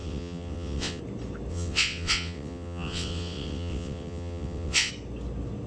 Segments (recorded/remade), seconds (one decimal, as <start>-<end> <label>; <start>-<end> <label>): 0.0-1.0 remade; 1.0-1.5 recorded; 1.5-4.9 remade; 4.9-5.7 recorded